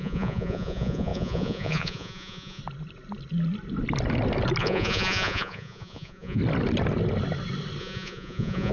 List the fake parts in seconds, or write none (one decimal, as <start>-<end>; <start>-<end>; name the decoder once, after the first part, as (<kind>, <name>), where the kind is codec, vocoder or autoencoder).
0.0-2.6 (vocoder, Vocos); 4.6-6.4; 7.8-8.7